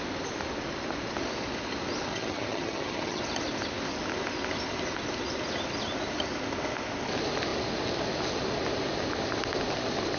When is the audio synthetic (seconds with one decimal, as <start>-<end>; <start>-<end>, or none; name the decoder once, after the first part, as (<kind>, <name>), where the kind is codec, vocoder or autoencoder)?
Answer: 2.1-3.2 (vocoder, HiFi-GAN)